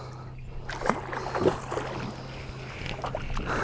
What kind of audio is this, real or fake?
real